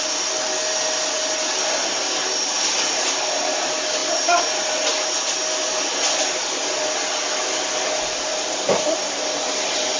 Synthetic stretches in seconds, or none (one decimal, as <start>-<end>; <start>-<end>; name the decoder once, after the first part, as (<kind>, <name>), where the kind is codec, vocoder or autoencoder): none